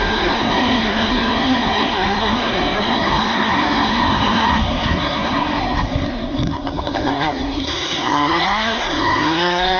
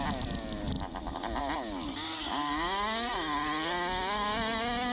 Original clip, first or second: second